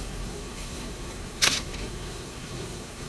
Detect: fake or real fake